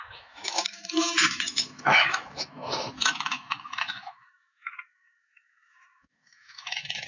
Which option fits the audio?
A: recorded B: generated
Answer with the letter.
B